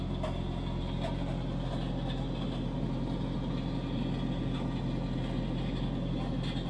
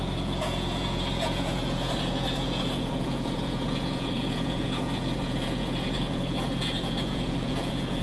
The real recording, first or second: first